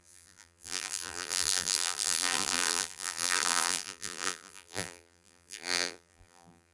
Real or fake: fake